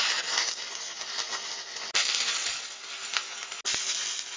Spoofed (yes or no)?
no